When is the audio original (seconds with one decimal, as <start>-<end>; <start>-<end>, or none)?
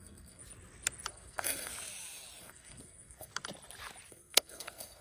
0.4-1.1; 1.7-2.4; 3.3-4.1